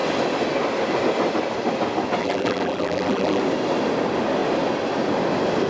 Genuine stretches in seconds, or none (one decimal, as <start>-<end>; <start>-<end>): 0.0-2.2; 3.4-5.7

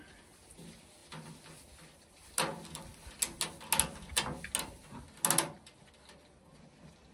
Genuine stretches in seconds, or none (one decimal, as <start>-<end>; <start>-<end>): 0.0-7.1

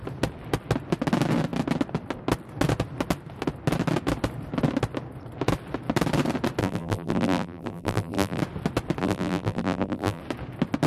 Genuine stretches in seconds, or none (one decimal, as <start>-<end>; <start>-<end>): 0.0-6.6; 8.4-9.0; 10.2-10.9

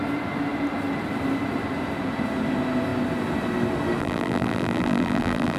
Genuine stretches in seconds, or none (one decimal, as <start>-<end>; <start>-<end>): 0.0-4.0

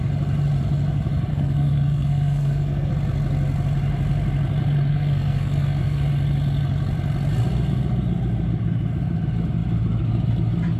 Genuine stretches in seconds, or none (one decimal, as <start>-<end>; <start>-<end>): 0.0-1.3; 2.9-4.9; 6.0-10.8

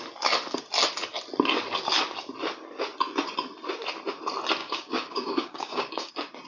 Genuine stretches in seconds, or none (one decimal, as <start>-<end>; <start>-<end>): 0.0-4.6; 6.1-6.5